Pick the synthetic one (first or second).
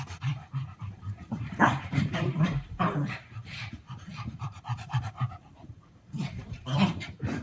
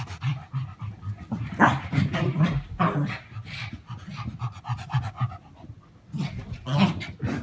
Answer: first